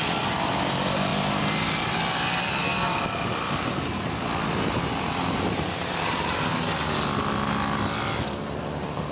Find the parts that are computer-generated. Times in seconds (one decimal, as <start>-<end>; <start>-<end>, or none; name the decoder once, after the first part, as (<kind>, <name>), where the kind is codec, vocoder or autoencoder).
none